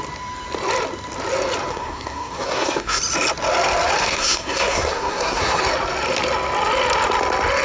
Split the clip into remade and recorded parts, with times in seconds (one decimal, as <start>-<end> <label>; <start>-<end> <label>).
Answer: 0.0-1.7 recorded; 1.7-3.0 remade; 3.0-4.0 recorded; 4.0-5.6 remade; 5.6-7.6 recorded